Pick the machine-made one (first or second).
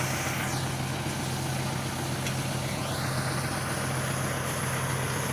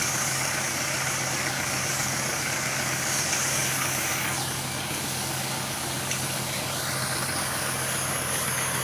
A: second